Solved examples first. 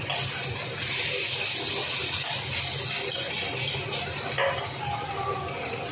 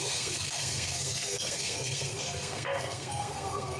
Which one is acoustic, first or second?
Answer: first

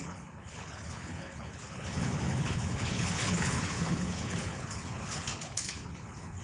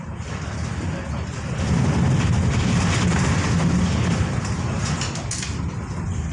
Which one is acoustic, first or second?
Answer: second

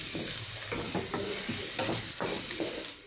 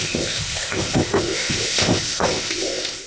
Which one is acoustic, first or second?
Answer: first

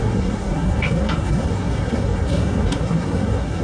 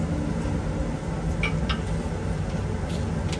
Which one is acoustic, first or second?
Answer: second